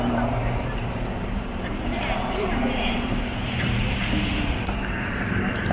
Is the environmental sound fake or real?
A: fake